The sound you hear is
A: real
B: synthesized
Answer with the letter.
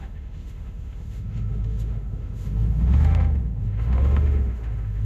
B